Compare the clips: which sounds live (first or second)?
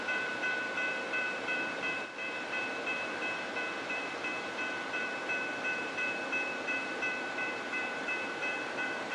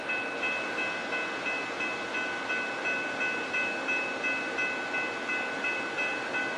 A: second